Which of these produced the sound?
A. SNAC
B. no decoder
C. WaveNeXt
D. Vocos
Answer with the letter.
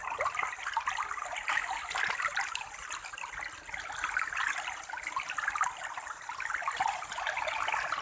B